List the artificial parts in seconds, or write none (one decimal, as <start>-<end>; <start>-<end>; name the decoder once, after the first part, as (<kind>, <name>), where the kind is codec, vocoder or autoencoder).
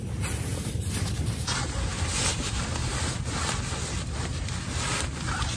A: 0.5-1.3 (vocoder, BigVGAN v2)